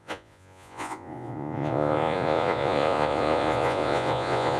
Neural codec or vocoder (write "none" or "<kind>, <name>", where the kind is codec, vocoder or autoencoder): vocoder, Vocos